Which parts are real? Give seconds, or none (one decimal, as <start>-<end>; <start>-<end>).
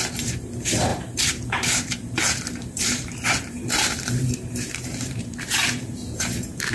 none